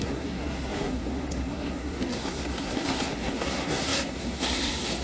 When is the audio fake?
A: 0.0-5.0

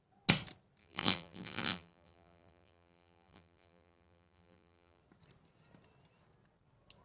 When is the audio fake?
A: 0.8-5.0